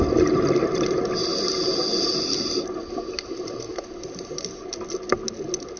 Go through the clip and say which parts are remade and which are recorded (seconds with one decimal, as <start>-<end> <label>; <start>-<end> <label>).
0.0-5.8 recorded